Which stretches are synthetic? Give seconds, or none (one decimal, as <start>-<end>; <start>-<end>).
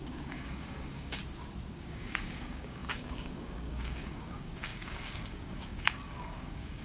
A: 0.0-1.2; 1.7-6.8